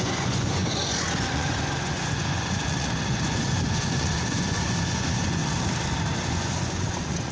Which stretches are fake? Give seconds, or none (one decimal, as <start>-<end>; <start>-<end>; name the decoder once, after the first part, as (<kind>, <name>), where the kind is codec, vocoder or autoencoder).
0.0-5.4 (vocoder, Vocos); 6.2-7.3

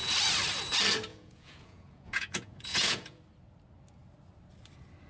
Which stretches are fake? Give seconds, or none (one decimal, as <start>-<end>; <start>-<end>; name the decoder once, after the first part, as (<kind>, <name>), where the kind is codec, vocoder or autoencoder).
1.1-3.2 (vocoder, Vocos)